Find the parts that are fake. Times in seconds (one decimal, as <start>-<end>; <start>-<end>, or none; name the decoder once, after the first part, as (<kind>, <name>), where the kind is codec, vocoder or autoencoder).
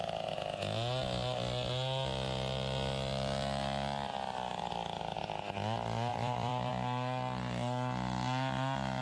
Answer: 6.1-6.7 (vocoder, BigVGAN v2)